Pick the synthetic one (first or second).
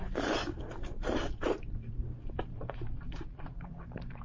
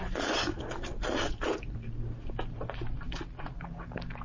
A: first